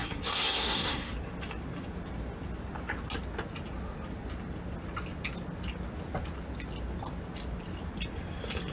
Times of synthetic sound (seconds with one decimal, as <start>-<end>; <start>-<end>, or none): 0.0-1.1